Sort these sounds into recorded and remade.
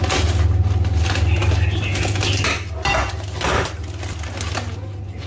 recorded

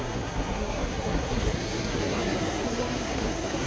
remade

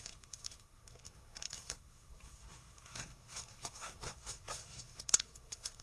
remade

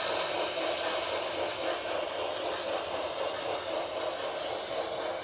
recorded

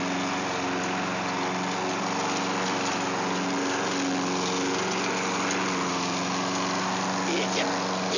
recorded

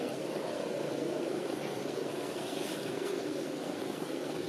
remade